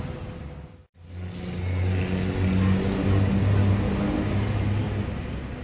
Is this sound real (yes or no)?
yes